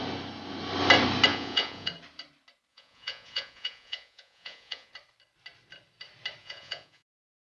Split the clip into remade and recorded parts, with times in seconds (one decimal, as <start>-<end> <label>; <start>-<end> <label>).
0.0-1.3 recorded; 1.3-1.9 remade; 1.9-2.7 recorded; 2.7-4.9 remade; 4.9-6.4 recorded; 6.4-7.1 remade; 7.1-7.5 recorded